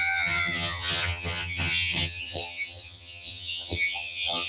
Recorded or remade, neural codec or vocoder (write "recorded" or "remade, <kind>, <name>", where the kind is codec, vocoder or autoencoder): remade, vocoder, HiFi-GAN